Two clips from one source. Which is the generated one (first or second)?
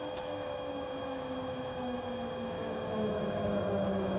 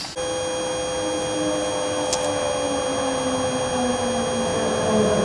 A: first